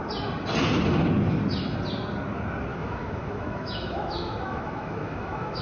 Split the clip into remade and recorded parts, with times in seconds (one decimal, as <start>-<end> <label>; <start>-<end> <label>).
0.0-2.7 recorded; 2.7-5.6 remade